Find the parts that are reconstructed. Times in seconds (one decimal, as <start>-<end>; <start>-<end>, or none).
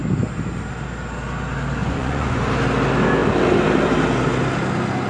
1.8-2.5